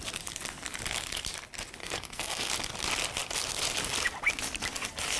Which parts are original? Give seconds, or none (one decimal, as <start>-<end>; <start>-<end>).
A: 0.0-1.8; 2.5-5.2